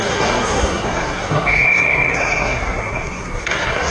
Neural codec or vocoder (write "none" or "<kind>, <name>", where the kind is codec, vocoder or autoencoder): codec, SNAC